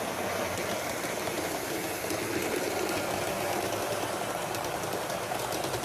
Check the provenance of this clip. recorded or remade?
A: recorded